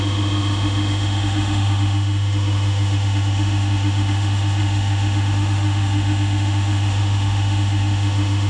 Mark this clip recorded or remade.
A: remade